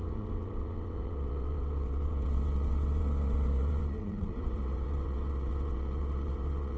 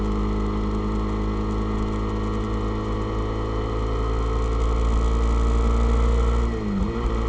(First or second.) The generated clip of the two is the first